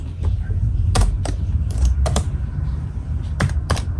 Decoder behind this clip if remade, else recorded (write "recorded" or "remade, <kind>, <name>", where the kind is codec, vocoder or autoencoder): remade, vocoder, BigVGAN v2